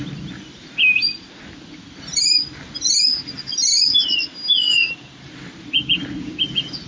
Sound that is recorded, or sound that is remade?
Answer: recorded